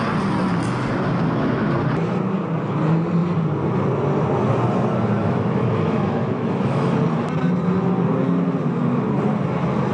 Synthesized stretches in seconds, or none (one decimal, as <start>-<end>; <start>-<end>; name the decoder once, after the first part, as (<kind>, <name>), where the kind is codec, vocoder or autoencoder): 5.2-6.9 (autoencoder, DAC-VAE)